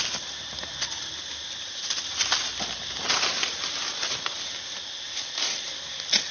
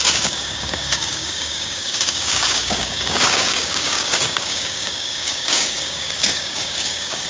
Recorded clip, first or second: first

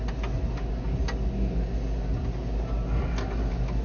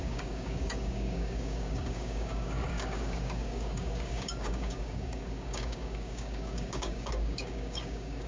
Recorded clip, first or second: first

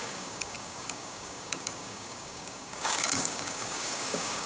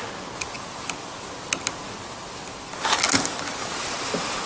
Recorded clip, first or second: second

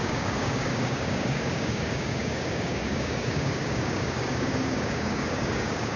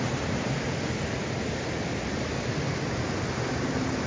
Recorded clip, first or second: second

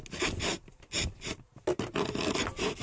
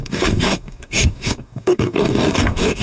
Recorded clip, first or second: first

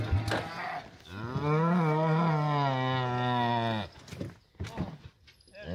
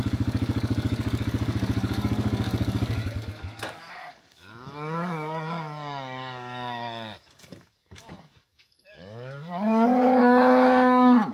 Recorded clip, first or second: first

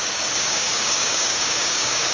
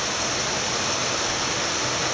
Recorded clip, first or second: second